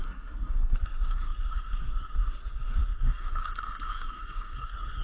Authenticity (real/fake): fake